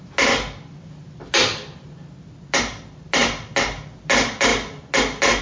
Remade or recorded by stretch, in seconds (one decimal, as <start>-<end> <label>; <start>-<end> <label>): 0.0-5.4 recorded

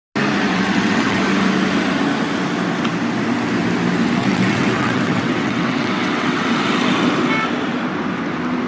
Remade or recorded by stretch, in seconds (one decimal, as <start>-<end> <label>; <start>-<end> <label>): 0.0-0.5 recorded; 0.5-1.2 remade; 1.2-4.2 recorded; 4.2-6.6 remade; 6.6-8.7 recorded

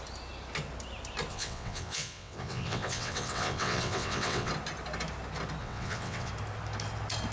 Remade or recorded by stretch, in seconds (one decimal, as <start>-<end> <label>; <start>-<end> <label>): 0.0-1.3 recorded; 1.3-4.5 remade; 4.5-5.6 recorded; 5.6-6.3 remade; 6.3-7.3 recorded

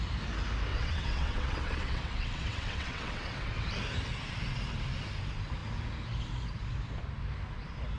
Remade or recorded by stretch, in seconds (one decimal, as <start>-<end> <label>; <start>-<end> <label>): 0.0-0.7 recorded; 0.7-3.7 remade; 3.7-8.0 recorded

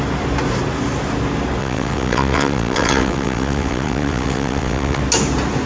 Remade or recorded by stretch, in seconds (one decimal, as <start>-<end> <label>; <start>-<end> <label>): 0.0-1.6 recorded; 1.6-5.0 remade; 5.0-5.7 recorded